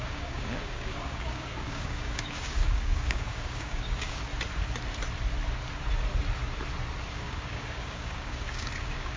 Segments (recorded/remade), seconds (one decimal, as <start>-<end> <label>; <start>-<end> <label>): 0.0-4.3 remade; 4.3-7.1 recorded; 7.1-9.2 remade